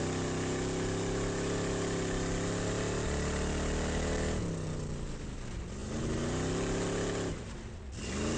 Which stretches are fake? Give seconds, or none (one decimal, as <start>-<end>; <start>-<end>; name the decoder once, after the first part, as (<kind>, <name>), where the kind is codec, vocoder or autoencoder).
none

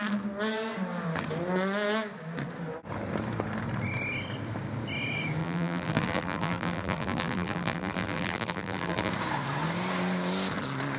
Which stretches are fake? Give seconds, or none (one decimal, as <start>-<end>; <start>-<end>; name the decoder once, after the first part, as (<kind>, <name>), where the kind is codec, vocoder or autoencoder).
5.4-9.1 (vocoder, BigVGAN v2)

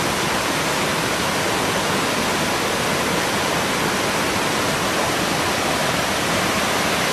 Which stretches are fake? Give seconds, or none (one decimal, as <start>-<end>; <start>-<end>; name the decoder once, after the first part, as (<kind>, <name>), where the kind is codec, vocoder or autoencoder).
5.8-6.4 (vocoder, BigVGAN v2)

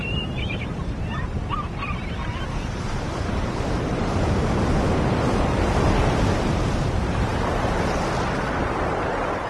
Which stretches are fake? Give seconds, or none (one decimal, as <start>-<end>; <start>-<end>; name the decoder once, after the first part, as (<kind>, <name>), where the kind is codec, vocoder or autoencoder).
0.0-7.3 (vocoder, BigVGAN v2); 8.6-9.5

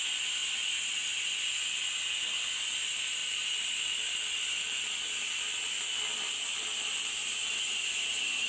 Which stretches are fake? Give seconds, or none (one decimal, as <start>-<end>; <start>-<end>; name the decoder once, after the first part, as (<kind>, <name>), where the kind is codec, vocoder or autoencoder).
3.2-7.1 (vocoder, BigVGAN v2)

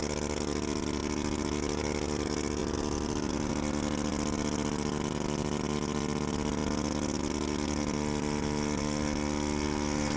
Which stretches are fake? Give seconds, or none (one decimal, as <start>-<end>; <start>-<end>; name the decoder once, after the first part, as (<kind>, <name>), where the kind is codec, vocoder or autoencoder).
none

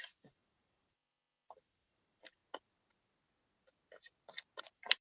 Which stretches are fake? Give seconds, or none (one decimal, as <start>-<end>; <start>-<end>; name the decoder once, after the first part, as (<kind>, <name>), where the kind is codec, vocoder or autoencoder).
0.0-2.4 (vocoder, BigVGAN v2); 4.6-5.0

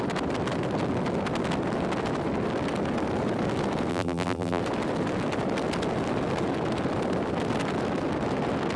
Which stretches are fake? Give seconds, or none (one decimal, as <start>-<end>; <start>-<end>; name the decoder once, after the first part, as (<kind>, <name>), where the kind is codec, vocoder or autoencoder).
3.9-4.6 (vocoder, BigVGAN v2)